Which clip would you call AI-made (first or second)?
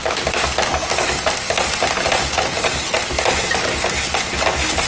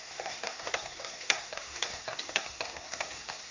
second